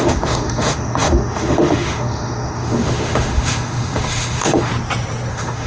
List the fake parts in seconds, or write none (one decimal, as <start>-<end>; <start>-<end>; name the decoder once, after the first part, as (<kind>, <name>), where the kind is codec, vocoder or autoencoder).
0.0-4.7 (autoencoder, DAC-VAE); 5.3-5.7